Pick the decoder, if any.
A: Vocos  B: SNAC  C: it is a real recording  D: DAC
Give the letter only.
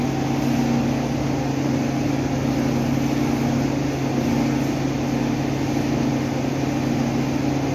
C